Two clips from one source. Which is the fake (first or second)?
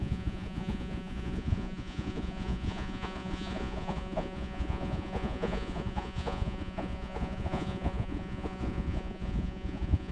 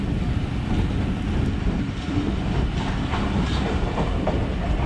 first